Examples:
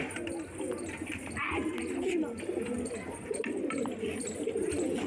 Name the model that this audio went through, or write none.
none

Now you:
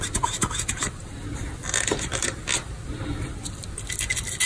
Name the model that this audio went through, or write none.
none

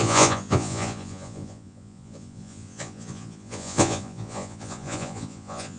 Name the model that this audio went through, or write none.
vocoder, Vocos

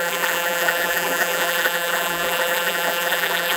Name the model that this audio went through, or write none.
vocoder, BigVGAN v2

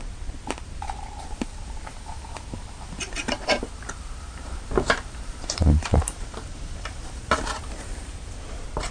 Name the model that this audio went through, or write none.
vocoder, BigVGAN v2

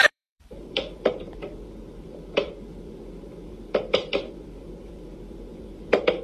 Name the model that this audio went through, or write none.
vocoder, BigVGAN v2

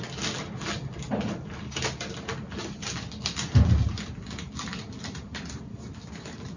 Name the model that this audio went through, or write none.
none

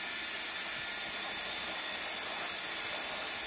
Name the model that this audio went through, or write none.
vocoder, BigVGAN v2